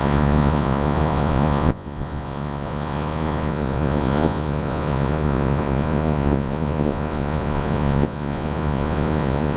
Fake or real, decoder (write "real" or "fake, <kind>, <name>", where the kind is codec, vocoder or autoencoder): fake, vocoder, Vocos